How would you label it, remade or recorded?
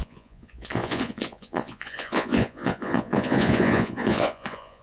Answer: remade